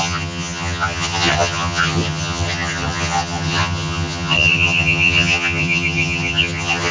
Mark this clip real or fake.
fake